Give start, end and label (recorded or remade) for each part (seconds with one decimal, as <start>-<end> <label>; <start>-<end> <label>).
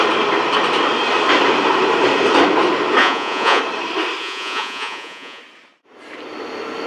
0.0-3.0 recorded; 3.0-3.6 remade; 3.6-4.2 recorded; 4.2-5.4 remade; 5.4-6.9 recorded